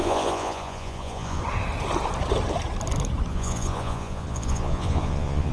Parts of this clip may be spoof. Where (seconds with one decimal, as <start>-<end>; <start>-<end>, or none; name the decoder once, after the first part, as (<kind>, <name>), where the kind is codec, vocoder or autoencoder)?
0.0-1.4 (vocoder, Vocos); 3.3-5.5